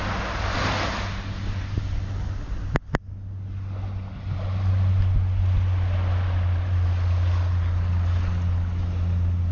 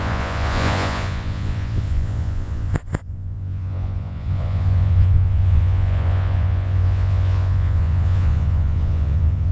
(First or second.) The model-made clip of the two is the second